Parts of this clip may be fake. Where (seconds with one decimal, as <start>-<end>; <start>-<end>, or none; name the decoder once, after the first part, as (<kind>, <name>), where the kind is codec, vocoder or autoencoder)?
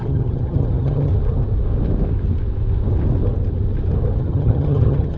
0.0-1.1 (vocoder, HiFi-GAN); 4.2-5.2